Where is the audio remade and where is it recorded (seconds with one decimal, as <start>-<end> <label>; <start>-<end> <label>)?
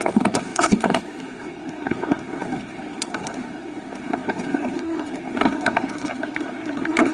0.0-7.1 remade